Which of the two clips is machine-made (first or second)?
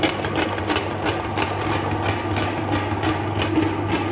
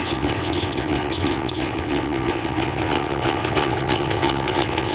second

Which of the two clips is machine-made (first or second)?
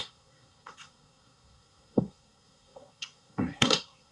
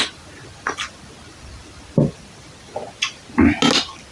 first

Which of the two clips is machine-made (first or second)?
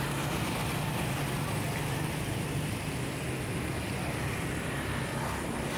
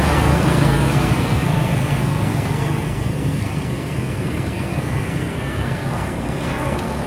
second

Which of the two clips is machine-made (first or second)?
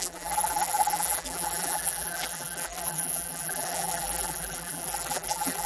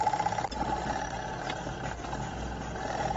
first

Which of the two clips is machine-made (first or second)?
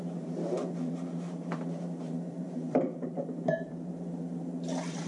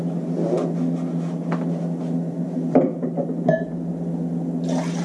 first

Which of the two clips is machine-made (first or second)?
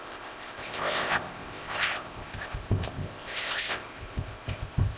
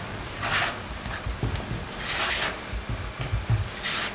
first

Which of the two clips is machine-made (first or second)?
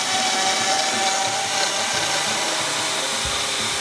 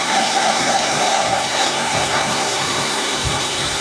second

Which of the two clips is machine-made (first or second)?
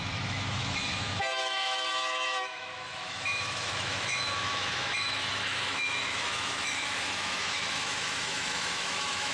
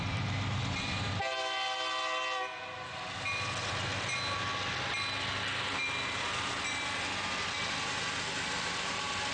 first